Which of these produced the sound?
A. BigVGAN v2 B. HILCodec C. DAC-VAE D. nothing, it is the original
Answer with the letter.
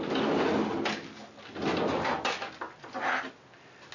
D